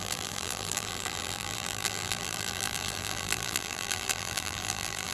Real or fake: fake